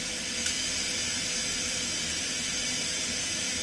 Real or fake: real